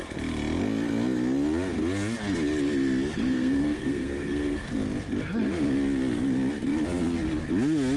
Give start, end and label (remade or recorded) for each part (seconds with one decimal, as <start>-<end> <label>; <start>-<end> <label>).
0.0-3.3 recorded; 3.3-4.7 remade; 4.7-8.0 recorded